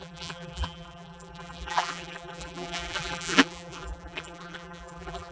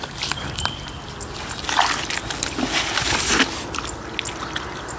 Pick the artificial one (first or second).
first